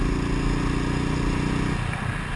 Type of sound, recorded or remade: recorded